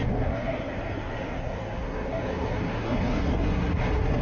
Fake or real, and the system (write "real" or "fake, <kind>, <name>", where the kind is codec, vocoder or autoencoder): fake, codec, SNAC